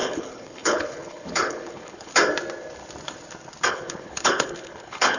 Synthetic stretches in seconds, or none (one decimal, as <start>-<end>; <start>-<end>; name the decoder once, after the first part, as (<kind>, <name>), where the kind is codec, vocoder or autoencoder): 0.0-2.1 (codec, HILCodec); 3.7-5.2